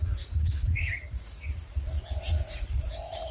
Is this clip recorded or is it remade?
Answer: remade